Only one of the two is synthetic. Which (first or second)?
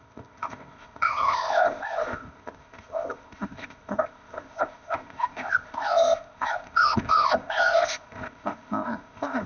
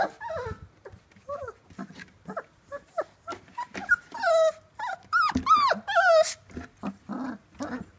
first